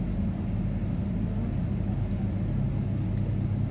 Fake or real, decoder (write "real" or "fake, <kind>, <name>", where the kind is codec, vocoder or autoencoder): real